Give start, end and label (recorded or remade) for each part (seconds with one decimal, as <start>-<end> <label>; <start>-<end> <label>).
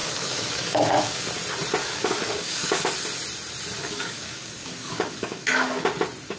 0.0-1.3 remade; 1.3-1.8 recorded; 1.8-2.9 remade; 2.9-3.8 recorded; 3.8-5.8 remade; 5.8-6.4 recorded